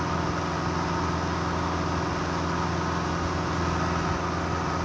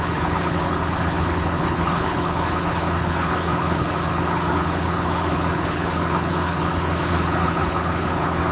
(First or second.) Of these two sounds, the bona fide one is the first